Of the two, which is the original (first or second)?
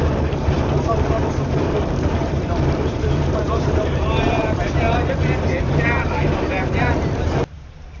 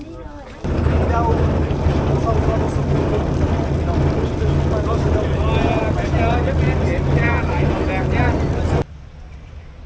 second